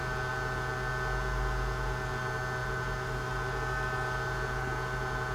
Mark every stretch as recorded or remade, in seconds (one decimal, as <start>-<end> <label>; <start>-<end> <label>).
0.0-5.3 recorded